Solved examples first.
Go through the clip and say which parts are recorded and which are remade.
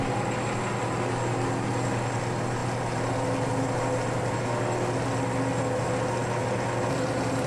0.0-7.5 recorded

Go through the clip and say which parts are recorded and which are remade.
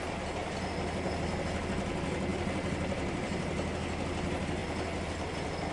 0.0-2.3 recorded; 2.3-3.7 remade; 3.7-5.7 recorded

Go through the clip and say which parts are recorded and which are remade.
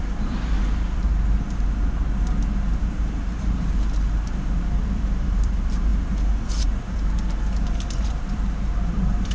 0.0-1.1 remade; 1.1-2.8 recorded; 2.8-5.9 remade; 5.9-6.6 recorded; 6.6-9.3 remade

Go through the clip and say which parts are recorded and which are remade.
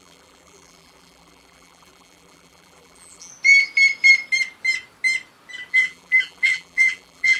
0.0-3.3 remade; 3.3-5.7 recorded; 5.7-7.4 remade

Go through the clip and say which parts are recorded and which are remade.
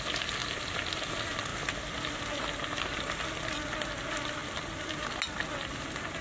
0.0-6.2 recorded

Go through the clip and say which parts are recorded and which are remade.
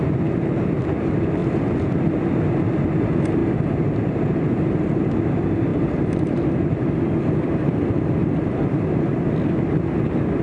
0.0-1.4 recorded; 1.4-2.5 remade; 2.5-3.4 recorded; 3.4-5.1 remade; 5.1-5.7 recorded; 5.7-9.2 remade; 9.2-10.4 recorded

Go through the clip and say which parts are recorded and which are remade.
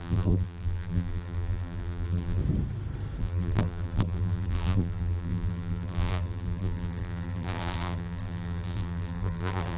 0.0-2.4 remade; 2.4-3.2 recorded; 3.2-9.8 remade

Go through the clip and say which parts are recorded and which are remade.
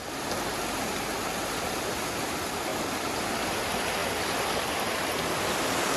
0.0-2.7 recorded; 2.7-3.6 remade; 3.6-4.0 recorded; 4.0-5.3 remade; 5.3-6.0 recorded